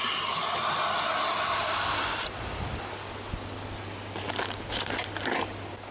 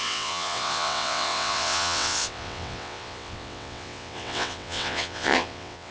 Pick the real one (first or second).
first